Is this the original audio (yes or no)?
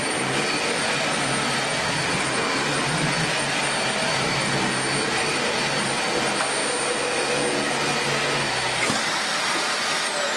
yes